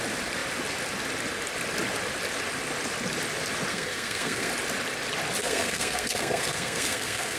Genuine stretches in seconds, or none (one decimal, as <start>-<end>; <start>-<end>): 0.0-3.7; 4.5-5.4